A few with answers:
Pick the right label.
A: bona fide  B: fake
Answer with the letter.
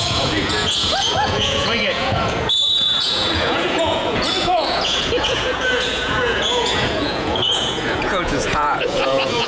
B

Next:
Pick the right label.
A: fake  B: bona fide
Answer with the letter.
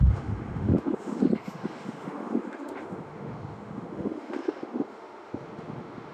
A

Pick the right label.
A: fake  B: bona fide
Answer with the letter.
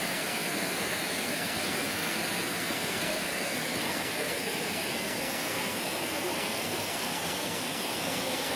A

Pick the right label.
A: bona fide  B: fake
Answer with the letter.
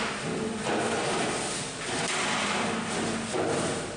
A